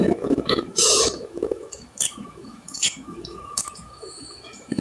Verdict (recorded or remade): remade